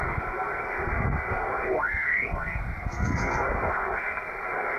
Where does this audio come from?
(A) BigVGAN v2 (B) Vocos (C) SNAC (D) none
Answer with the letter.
C